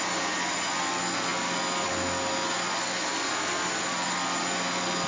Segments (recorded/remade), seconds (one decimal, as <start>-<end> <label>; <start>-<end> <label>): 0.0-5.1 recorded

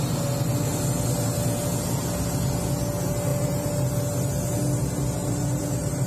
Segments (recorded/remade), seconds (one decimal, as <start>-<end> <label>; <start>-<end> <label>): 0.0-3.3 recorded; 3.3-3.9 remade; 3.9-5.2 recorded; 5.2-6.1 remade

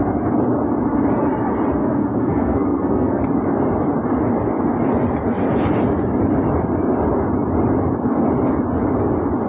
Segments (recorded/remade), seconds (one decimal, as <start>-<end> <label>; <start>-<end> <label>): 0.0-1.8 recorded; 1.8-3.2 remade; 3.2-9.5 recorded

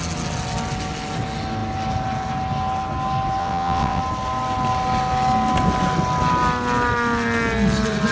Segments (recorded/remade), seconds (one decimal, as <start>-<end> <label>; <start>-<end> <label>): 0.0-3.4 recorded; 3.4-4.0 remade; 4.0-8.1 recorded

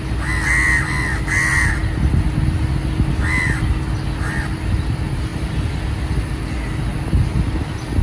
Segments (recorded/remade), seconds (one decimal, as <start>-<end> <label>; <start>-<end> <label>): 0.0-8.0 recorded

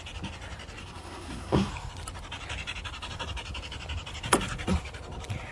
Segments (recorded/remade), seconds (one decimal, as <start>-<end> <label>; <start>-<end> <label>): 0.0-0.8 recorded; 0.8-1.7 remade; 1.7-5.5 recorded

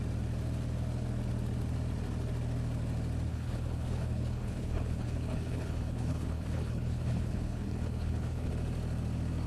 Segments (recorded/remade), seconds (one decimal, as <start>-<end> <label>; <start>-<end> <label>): 0.0-3.3 recorded; 3.3-8.5 remade; 8.5-9.5 recorded

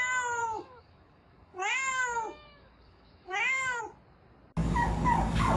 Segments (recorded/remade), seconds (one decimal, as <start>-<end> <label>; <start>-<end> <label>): 0.0-0.4 recorded; 0.4-3.8 remade; 3.8-4.6 recorded; 4.6-5.6 remade